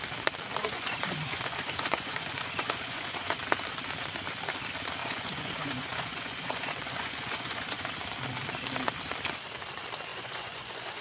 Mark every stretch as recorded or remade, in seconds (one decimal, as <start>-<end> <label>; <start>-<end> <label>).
0.0-0.6 recorded; 0.6-3.4 remade; 3.4-5.0 recorded; 5.0-7.9 remade; 7.9-10.1 recorded; 10.1-11.0 remade